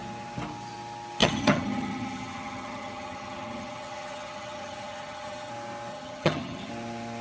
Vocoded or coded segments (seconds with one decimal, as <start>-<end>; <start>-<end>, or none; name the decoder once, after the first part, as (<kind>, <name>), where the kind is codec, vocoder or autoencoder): 1.2-5.5 (vocoder, HiFi-GAN); 5.9-6.7